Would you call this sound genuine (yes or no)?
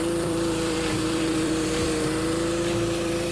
no